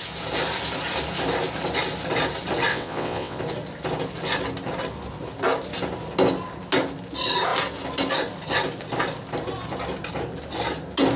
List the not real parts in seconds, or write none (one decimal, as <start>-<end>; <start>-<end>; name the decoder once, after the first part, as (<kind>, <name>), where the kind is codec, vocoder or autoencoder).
2.7-3.4 (vocoder, WaveNeXt)

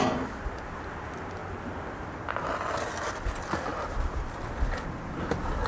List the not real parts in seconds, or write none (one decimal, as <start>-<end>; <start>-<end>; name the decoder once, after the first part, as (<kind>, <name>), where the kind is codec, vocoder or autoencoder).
3.7-4.4 (vocoder, BigVGAN v2)

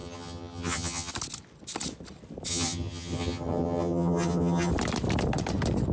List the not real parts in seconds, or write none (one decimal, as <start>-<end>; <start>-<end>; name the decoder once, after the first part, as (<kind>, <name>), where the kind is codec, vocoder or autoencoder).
0.0-1.1 (vocoder, HiFi-GAN); 2.5-4.7

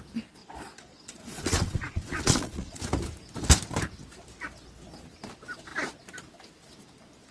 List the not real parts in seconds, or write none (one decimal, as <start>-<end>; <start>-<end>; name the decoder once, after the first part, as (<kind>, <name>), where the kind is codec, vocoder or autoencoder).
0.4-2.8 (vocoder, Vocos)

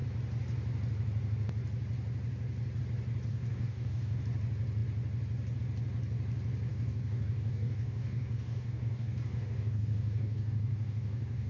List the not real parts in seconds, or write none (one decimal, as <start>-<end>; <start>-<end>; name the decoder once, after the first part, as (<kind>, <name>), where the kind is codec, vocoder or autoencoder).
3.3-4.2 (codec, DAC); 6.7-11.5

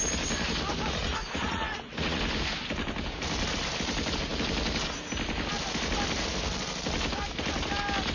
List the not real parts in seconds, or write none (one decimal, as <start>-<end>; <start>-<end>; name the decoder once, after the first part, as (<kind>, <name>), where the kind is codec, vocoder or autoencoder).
1.1-2.2 (vocoder, Vocos)

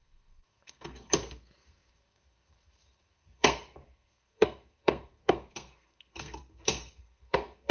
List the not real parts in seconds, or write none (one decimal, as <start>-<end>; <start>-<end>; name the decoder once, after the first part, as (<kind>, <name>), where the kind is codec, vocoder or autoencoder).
0.0-7.7 (codec, SNAC)

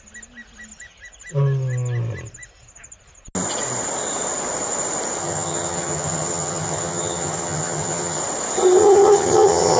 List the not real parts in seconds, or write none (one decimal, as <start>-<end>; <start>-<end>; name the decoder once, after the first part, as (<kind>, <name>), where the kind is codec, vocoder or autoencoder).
5.2-8.2 (vocoder, HiFi-GAN); 8.8-9.8